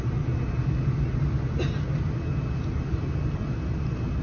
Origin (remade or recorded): recorded